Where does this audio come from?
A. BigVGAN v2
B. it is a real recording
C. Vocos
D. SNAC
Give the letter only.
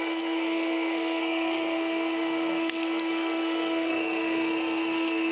D